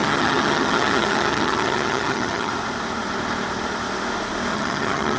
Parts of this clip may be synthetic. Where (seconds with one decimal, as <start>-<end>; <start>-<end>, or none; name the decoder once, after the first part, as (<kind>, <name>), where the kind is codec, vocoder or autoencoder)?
0.0-2.5 (vocoder, HiFi-GAN); 4.5-5.2